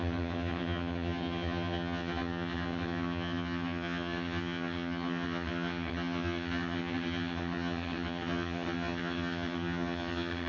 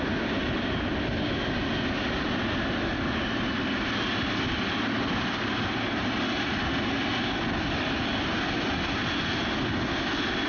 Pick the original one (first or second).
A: second